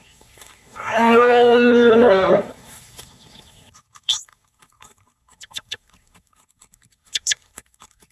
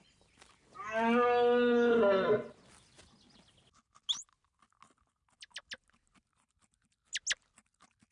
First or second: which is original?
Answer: second